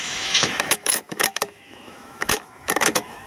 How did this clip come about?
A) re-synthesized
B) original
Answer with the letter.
A